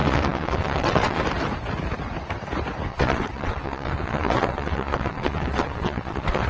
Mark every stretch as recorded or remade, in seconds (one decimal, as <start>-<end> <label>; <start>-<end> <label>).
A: 0.0-1.2 remade; 1.2-2.9 recorded; 2.9-6.5 remade